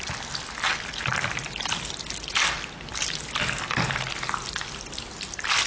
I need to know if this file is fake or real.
real